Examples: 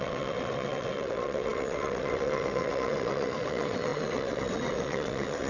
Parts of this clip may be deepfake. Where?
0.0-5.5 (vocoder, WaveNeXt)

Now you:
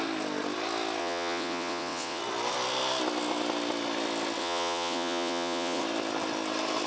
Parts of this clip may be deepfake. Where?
1.0-2.2 (vocoder, WaveNeXt); 4.4-5.8